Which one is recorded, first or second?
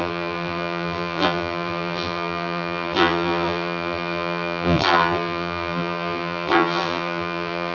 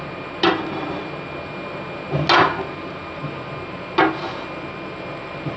second